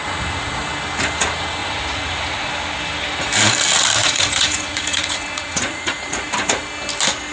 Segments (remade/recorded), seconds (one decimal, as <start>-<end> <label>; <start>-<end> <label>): 0.0-0.6 remade; 0.6-1.6 recorded; 1.6-2.5 remade; 2.5-4.0 recorded; 4.0-6.3 remade; 6.3-7.3 recorded